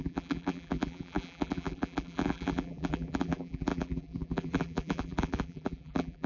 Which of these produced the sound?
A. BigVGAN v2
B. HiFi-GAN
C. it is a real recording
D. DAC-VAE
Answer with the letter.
A